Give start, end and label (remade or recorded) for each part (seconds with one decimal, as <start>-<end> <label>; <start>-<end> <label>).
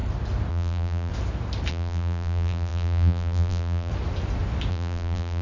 0.0-0.5 recorded; 0.5-1.1 remade; 1.1-1.7 recorded; 1.7-3.9 remade; 3.9-4.7 recorded; 4.7-5.4 remade